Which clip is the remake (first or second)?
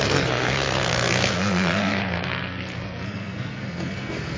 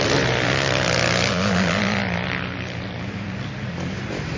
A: first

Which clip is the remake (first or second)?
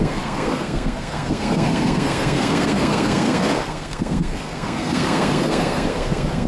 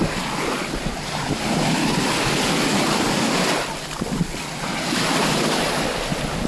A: first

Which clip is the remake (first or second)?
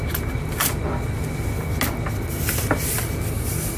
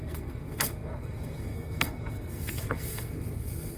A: second